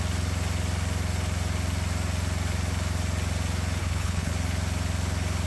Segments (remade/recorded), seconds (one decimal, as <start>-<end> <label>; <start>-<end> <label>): 0.0-3.8 recorded; 3.8-4.3 remade; 4.3-5.5 recorded